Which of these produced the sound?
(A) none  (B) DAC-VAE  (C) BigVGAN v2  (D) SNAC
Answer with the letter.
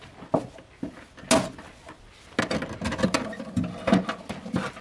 A